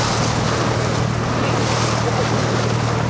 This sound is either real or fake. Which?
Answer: real